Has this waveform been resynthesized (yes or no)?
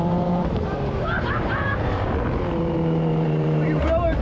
yes